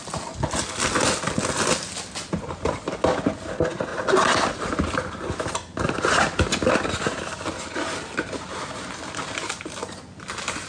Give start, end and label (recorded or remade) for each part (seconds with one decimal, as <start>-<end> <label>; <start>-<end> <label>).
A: 0.0-10.7 recorded